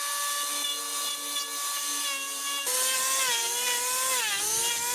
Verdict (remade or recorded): recorded